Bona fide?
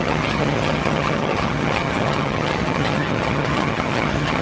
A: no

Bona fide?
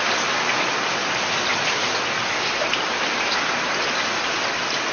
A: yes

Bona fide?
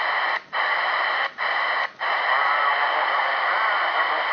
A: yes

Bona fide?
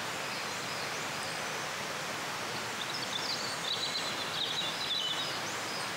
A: yes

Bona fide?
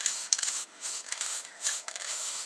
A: no